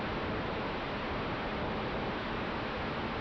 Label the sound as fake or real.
real